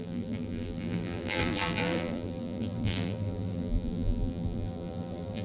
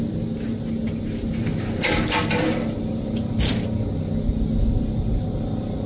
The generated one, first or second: first